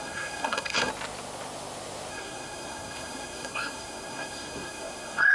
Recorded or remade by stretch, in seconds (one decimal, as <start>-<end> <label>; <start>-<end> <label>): 0.0-0.9 remade; 0.9-2.1 recorded; 2.1-5.3 remade